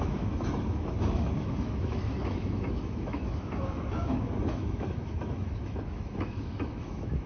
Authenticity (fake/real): fake